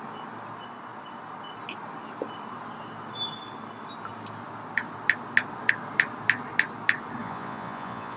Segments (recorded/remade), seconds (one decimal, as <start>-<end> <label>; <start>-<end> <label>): 0.0-7.2 recorded; 7.2-8.2 remade